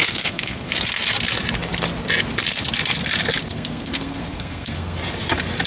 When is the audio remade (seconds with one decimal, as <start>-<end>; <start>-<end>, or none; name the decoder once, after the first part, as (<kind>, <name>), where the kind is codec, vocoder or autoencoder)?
0.0-0.7 (codec, SNAC); 3.4-5.0